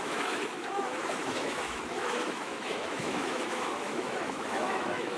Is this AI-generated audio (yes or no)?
yes